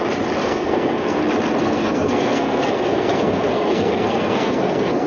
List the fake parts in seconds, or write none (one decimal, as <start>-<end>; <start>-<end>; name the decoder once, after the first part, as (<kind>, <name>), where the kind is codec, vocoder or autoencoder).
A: 0.4-1.2 (codec, SNAC); 1.6-5.1